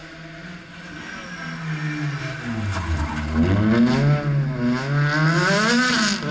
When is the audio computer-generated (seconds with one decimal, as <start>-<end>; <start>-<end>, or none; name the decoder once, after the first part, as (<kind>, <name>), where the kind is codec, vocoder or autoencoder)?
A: none

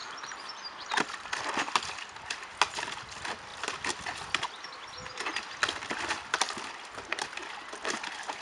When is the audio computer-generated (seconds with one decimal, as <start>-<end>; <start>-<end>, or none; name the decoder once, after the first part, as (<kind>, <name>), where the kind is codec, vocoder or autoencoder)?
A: 0.0-1.0 (vocoder, BigVGAN v2)